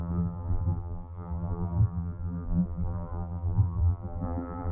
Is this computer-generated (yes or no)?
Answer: yes